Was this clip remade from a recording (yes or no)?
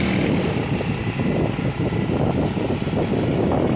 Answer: no